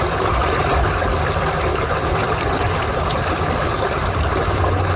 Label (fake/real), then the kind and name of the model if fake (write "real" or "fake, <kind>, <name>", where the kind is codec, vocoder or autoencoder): fake, vocoder, BigVGAN v2